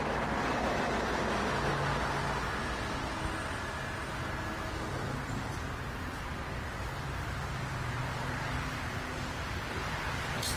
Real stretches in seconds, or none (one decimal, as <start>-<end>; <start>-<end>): 0.0-4.1; 8.5-10.6